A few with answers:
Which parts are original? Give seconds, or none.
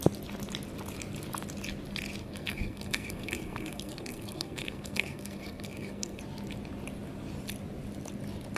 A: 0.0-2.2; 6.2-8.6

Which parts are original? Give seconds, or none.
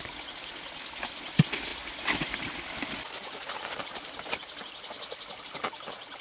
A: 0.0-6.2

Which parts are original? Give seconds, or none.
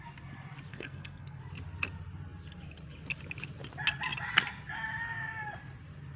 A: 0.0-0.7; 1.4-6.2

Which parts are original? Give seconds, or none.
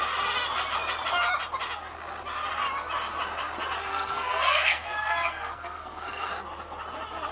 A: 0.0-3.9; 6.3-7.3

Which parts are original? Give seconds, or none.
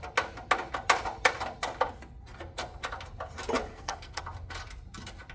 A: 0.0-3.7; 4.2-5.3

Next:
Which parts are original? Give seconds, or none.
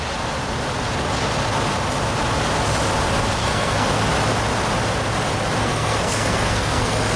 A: 0.0-3.4; 4.0-5.6